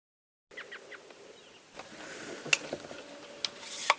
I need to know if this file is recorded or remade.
recorded